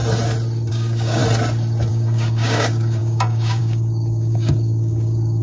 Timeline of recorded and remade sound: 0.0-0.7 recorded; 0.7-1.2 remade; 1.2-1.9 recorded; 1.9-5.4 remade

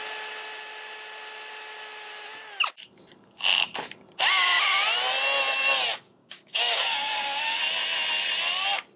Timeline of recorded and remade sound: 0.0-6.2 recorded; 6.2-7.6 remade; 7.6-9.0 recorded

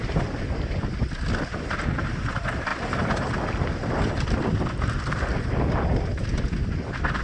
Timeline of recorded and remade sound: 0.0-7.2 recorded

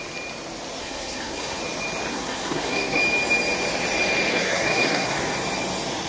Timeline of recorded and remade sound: 0.0-0.8 recorded; 0.8-1.6 remade; 1.6-2.1 recorded; 2.1-3.0 remade; 3.0-4.3 recorded; 4.3-5.2 remade; 5.2-6.1 recorded

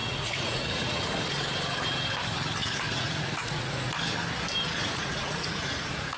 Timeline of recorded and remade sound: 0.0-1.4 remade; 1.4-2.6 recorded; 2.6-3.9 remade; 3.9-4.8 recorded; 4.8-6.2 remade

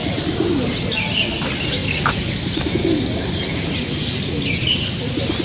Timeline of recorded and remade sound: 0.0-5.4 recorded

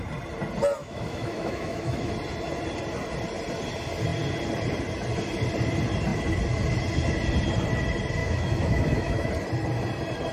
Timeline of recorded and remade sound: 0.0-0.8 recorded; 0.8-2.1 remade; 2.1-8.2 recorded; 8.2-9.3 remade; 9.3-10.3 recorded